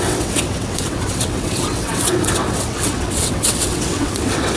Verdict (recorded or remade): remade